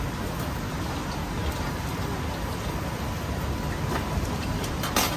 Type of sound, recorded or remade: recorded